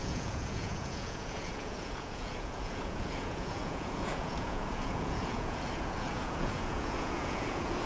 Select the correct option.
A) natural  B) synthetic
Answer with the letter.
B